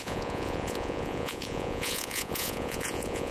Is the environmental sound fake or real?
fake